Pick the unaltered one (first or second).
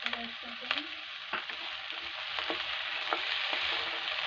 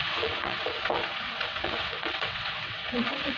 first